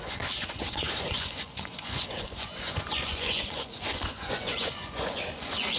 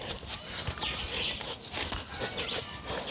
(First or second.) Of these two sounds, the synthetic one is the first